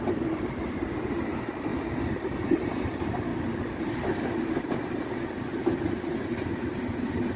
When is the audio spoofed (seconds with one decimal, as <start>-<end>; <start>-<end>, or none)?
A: 0.0-1.7; 2.4-3.3; 3.8-4.5; 5.8-7.4